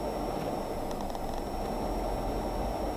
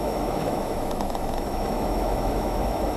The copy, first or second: second